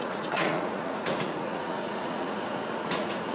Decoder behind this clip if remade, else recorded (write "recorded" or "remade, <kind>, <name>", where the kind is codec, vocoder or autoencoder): remade, vocoder, Vocos